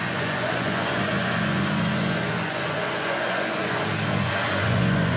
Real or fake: fake